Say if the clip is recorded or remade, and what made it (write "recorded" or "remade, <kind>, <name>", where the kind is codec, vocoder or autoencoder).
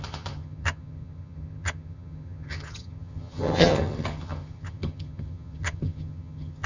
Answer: remade, vocoder, HiFi-GAN